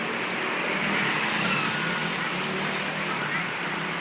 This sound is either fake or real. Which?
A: real